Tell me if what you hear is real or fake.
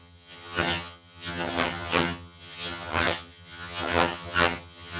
fake